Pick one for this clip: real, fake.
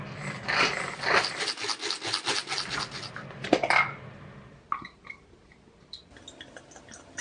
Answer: real